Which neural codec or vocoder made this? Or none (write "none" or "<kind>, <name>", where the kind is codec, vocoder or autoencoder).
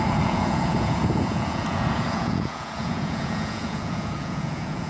vocoder, Vocos